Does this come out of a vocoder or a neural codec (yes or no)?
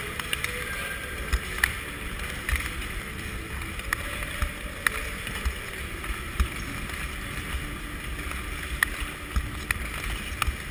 no